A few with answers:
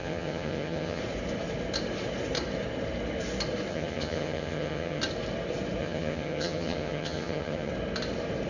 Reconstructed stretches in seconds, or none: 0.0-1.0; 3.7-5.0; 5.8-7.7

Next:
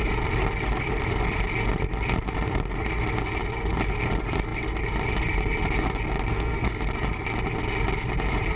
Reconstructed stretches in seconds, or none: 6.3-6.8